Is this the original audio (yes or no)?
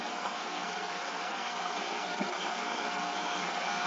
no